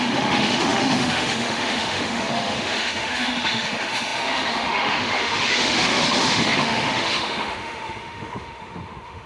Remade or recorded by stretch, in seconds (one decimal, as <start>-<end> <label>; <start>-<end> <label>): 0.0-9.3 remade